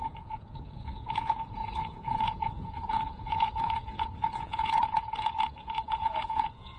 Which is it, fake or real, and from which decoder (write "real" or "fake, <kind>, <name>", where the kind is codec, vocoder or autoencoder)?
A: fake, vocoder, Vocos